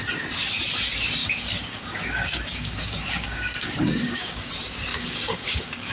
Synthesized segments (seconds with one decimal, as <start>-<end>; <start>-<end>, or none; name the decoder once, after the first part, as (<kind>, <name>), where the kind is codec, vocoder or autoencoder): 1.2-4.5 (codec, DAC); 4.9-5.9

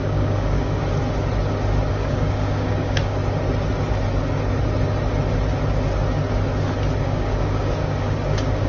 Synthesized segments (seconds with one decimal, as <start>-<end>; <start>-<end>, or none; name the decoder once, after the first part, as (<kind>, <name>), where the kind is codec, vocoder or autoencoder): 0.0-0.8 (codec, DAC); 1.9-3.2; 7.0-8.7

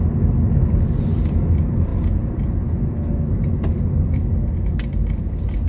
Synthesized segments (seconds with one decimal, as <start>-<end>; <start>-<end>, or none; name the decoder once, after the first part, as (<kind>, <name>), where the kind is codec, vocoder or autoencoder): none

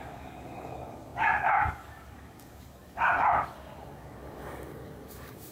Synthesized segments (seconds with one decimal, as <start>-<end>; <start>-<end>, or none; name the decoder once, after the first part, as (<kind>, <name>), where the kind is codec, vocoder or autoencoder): 0.0-5.5 (codec, DAC)

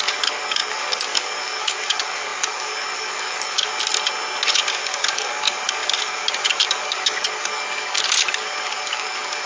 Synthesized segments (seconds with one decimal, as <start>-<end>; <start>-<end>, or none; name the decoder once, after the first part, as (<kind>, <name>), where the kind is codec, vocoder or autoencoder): 0.0-3.9 (codec, DAC); 4.5-9.5

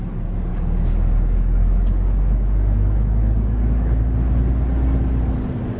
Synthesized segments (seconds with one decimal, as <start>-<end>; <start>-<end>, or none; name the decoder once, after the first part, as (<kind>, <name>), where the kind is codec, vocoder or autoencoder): 0.5-4.0 (codec, DAC)